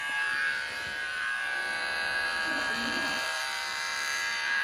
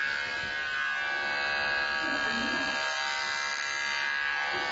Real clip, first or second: second